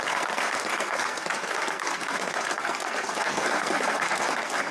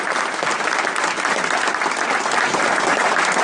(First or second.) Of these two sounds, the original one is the second